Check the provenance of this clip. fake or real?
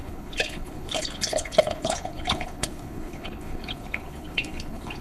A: fake